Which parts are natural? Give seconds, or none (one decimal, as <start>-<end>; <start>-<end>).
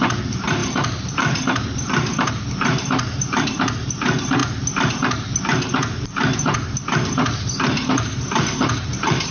4.4-4.9